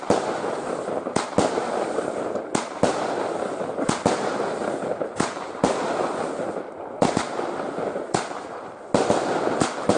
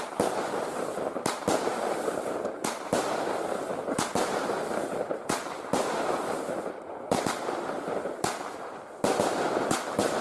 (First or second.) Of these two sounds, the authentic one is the first